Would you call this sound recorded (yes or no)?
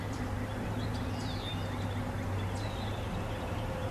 yes